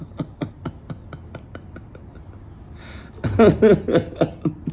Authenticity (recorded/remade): recorded